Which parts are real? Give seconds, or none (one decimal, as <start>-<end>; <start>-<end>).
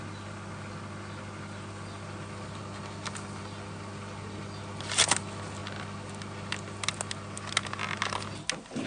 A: 0.0-8.9